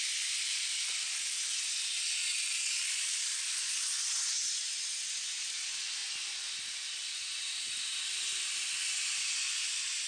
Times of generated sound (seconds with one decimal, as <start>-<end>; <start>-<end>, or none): none